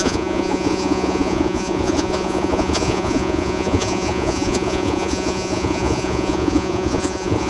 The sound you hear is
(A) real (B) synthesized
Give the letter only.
B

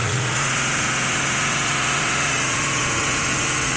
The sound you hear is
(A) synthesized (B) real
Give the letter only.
A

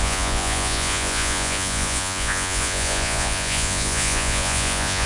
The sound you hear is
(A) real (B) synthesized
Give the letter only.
B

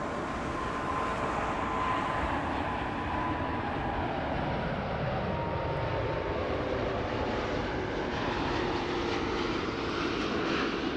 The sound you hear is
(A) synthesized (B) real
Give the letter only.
B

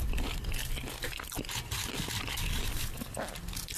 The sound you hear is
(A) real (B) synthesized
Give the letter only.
A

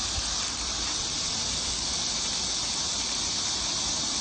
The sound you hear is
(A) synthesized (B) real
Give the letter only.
B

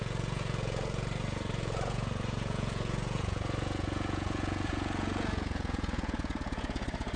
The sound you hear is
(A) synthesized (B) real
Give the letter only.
A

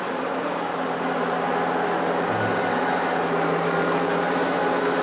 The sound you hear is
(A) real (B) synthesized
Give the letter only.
A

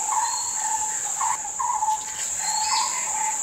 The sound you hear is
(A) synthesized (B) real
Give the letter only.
B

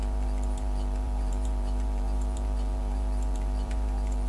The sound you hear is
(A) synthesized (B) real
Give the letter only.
A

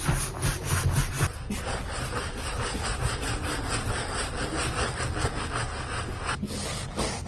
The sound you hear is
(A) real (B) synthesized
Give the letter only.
A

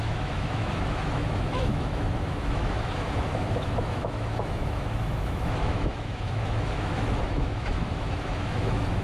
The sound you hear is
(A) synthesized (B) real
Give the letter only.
A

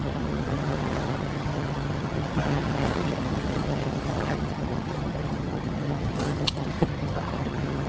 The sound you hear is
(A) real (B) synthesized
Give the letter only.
B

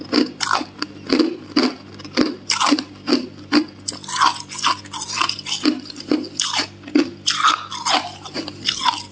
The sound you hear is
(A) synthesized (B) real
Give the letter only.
B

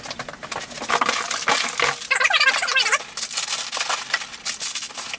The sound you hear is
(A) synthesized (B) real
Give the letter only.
B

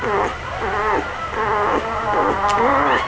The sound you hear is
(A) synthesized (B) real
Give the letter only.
B